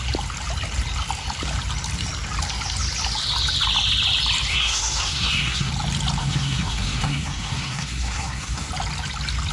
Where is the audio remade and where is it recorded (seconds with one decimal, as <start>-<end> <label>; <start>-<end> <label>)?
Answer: 0.0-4.5 recorded; 4.5-5.7 remade; 5.7-6.2 recorded; 6.2-8.7 remade; 8.7-9.5 recorded